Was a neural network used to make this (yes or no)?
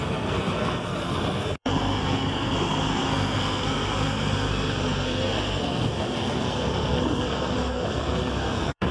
yes